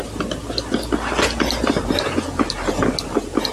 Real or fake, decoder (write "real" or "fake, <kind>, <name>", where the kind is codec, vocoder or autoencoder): real